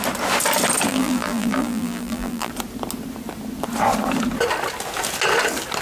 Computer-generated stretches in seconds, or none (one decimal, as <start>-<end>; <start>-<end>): 0.9-2.5